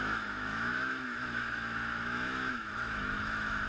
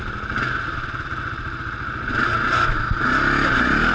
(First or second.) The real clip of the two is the second